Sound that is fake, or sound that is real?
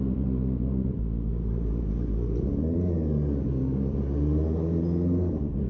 real